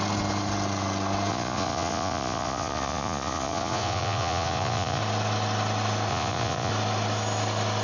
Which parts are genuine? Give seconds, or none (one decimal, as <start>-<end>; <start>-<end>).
0.0-1.3; 5.0-6.1; 6.7-7.8